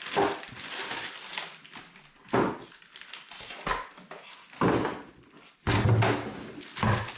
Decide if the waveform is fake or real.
real